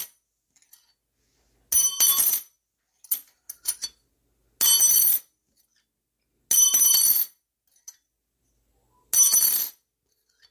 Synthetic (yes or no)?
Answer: no